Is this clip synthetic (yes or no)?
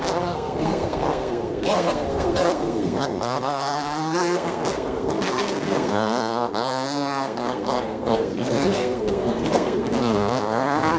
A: yes